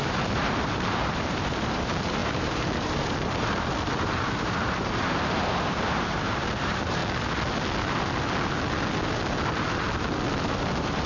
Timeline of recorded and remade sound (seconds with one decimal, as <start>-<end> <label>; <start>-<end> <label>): 0.0-7.0 remade; 7.0-10.3 recorded; 10.3-11.1 remade